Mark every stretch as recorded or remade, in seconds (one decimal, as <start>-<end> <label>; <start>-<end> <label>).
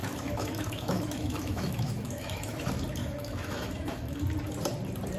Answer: 0.0-2.5 remade; 2.5-3.0 recorded; 3.0-4.2 remade; 4.2-5.2 recorded